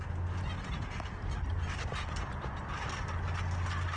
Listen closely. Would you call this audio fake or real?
real